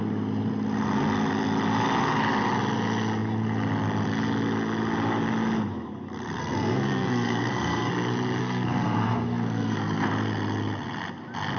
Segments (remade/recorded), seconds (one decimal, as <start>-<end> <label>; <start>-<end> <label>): 0.0-6.4 recorded; 6.4-7.9 remade; 7.9-8.4 recorded; 8.4-10.1 remade; 10.1-11.6 recorded